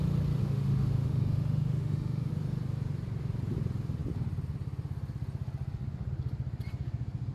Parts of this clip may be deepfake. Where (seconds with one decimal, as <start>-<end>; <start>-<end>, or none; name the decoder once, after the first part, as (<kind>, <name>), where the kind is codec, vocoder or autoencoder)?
0.4-2.3 (autoencoder, DAC-VAE)